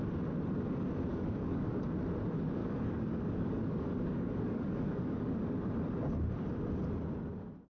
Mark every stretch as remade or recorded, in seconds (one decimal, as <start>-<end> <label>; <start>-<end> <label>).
0.0-1.1 recorded; 1.1-1.8 remade; 1.8-2.6 recorded; 2.6-5.4 remade; 5.4-7.7 recorded